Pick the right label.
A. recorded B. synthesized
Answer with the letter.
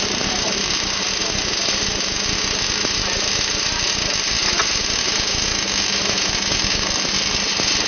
A